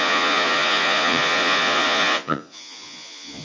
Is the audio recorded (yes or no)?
no